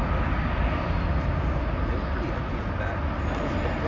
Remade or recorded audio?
recorded